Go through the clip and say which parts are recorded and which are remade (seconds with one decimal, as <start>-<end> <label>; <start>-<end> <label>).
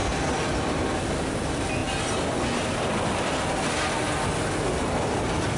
0.0-5.6 recorded